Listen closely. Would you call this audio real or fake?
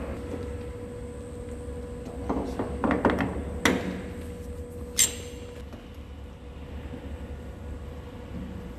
real